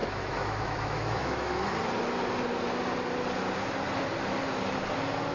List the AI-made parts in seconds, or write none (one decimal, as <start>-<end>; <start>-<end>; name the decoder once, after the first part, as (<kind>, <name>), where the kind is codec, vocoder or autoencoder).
0.0-1.7 (autoencoder, DAC-VAE)